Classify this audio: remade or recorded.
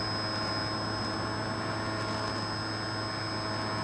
recorded